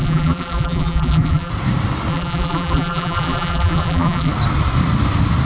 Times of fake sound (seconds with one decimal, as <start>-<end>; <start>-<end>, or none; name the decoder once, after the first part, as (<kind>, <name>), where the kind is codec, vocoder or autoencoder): 0.0-1.5 (vocoder, BigVGAN v2); 2.1-4.3